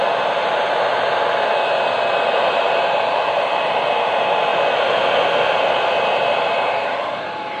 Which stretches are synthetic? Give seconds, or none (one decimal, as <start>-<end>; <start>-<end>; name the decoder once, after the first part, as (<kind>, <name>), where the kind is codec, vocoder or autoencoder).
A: 0.0-0.9 (vocoder, BigVGAN v2); 2.3-4.5; 6.1-7.6